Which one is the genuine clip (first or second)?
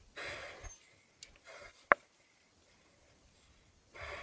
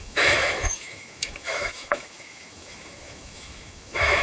first